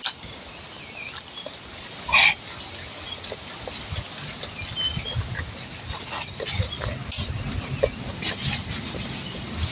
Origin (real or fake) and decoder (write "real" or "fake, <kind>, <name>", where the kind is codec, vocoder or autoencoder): real